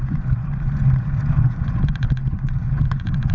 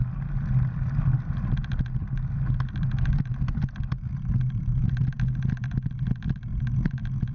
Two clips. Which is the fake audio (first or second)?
first